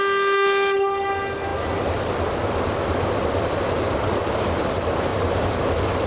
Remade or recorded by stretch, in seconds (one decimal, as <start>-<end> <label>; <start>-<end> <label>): 0.0-6.1 recorded